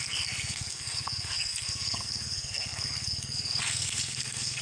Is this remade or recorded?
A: remade